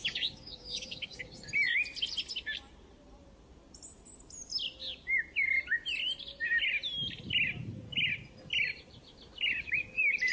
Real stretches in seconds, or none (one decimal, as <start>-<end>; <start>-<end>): 1.4-10.3